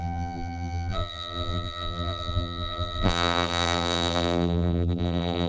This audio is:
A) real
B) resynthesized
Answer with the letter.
B